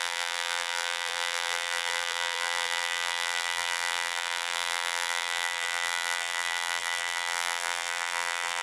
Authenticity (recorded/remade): remade